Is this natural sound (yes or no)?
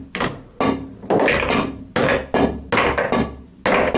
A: yes